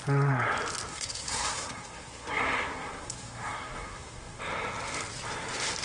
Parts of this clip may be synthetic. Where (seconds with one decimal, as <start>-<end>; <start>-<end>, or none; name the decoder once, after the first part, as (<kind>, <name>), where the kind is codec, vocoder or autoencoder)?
0.9-4.4 (codec, SNAC)